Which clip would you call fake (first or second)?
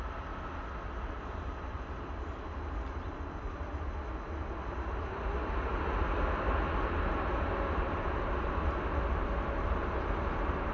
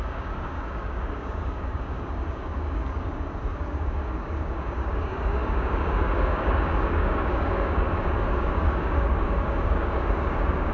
second